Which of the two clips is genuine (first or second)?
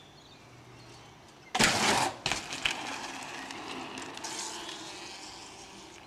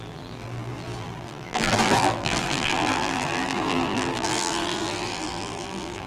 first